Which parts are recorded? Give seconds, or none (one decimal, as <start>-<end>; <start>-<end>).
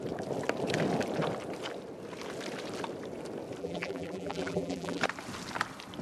0.0-3.6; 5.0-6.0